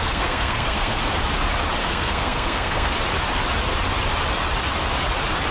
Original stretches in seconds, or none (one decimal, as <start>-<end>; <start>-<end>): 1.0-1.8; 2.9-5.5